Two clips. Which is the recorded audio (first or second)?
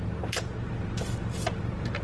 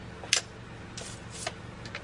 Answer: second